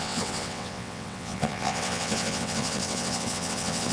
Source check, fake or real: fake